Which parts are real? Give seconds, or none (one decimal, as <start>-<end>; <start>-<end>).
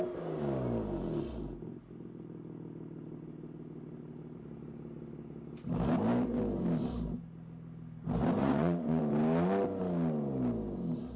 0.0-8.4; 9.0-11.2